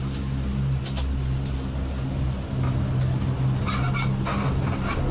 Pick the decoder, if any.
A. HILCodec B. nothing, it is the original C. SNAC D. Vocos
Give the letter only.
B